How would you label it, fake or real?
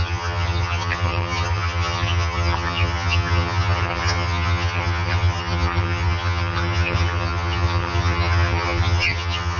fake